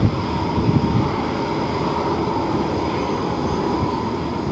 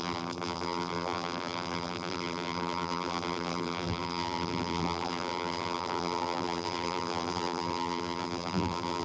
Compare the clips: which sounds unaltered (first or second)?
first